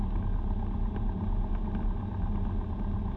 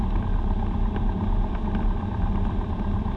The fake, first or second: second